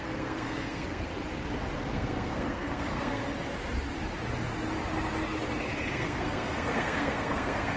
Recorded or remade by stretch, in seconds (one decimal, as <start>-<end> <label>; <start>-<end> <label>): 0.0-1.1 remade; 1.1-1.9 recorded; 1.9-3.2 remade; 3.2-5.9 recorded; 5.9-7.8 remade

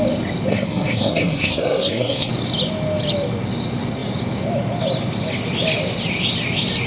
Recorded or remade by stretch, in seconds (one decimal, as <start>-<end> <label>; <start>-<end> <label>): 0.0-0.5 recorded; 0.5-2.3 remade; 2.3-6.9 recorded

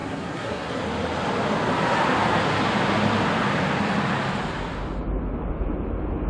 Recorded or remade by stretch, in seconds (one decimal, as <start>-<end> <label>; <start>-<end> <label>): 0.0-0.8 remade; 0.8-6.3 recorded

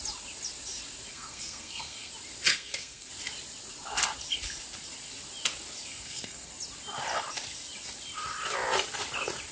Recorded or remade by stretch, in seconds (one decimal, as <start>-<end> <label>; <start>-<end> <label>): 0.0-1.1 recorded; 1.1-2.1 remade; 2.1-2.5 recorded; 2.5-3.1 remade; 3.1-5.9 recorded; 5.9-6.5 remade; 6.5-9.5 recorded

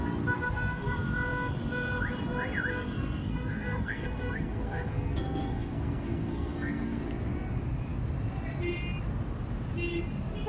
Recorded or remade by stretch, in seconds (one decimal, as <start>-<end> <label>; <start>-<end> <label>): 0.0-2.7 recorded; 2.7-7.0 remade; 7.0-10.5 recorded

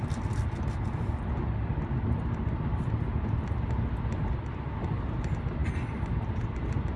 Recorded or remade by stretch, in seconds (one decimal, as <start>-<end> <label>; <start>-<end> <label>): 0.0-7.0 recorded